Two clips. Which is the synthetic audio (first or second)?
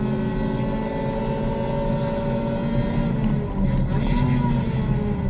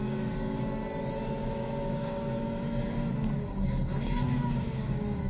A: second